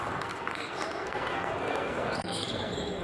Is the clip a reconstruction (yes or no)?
yes